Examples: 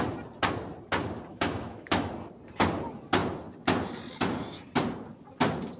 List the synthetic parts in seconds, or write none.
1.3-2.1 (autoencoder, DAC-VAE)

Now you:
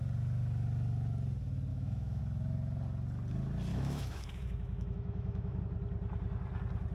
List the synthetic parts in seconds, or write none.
1.7-2.2 (autoencoder, DAC-VAE); 3.7-5.6

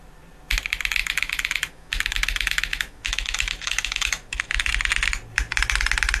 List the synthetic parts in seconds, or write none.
1.0-4.7 (autoencoder, DAC-VAE)

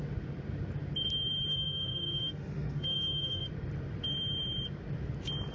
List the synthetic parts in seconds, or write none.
1.5-3.5 (autoencoder, DAC-VAE)

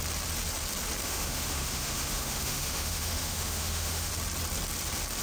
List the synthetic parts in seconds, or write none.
1.0-4.1 (autoencoder, DAC-VAE)